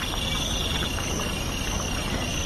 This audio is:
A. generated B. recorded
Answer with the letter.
B